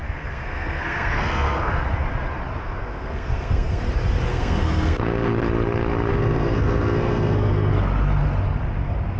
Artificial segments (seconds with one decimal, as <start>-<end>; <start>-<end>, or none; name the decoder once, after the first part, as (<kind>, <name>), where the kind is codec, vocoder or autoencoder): 0.0-1.7 (codec, SNAC); 2.6-3.8; 4.3-5.4; 6.1-7.7